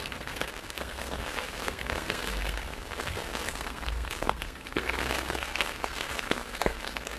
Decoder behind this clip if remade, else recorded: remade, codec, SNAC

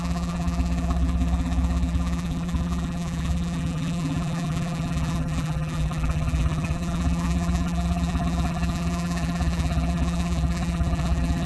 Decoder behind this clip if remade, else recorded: remade, vocoder, BigVGAN v2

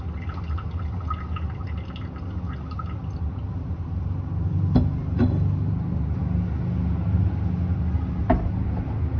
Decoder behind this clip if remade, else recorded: recorded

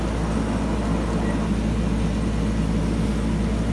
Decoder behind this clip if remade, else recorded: recorded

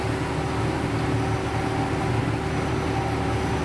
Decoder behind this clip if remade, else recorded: recorded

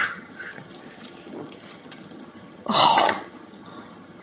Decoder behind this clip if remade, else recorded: remade, vocoder, HiFi-GAN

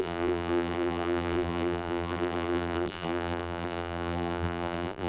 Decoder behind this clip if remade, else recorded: remade, vocoder, BigVGAN v2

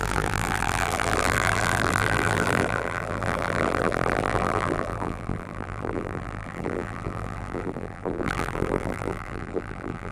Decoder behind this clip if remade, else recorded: remade, vocoder, BigVGAN v2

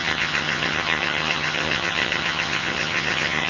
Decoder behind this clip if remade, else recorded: remade, vocoder, HiFi-GAN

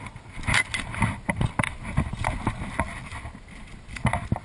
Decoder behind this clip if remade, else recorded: recorded